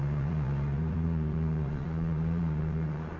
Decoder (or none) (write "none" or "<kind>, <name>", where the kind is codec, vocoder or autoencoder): vocoder, Vocos